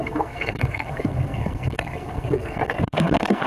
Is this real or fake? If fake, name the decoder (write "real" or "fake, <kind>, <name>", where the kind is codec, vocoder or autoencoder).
fake, codec, SNAC